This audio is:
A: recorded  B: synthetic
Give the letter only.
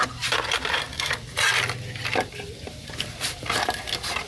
A